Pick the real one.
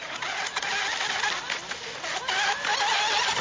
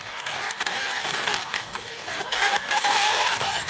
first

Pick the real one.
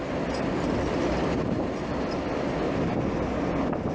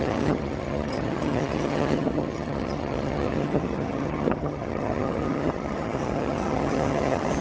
first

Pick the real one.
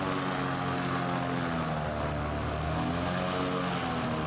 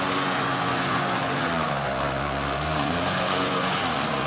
first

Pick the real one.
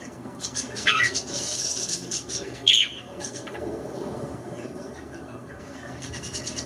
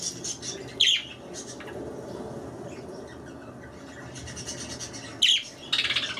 second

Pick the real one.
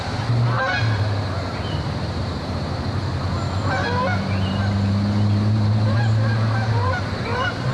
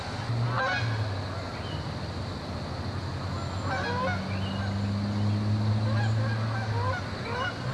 second